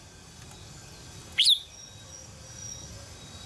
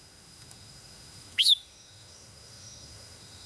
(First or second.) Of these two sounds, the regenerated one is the second